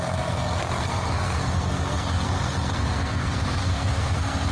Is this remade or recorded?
remade